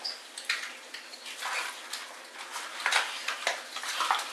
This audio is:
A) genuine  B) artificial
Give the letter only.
A